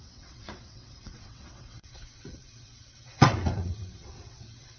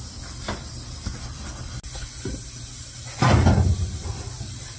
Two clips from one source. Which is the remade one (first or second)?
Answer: first